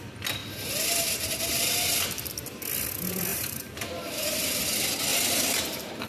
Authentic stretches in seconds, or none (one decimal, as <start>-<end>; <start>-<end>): 0.0-3.3; 4.6-5.1